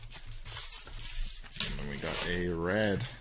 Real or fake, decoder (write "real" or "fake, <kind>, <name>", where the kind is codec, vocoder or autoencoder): real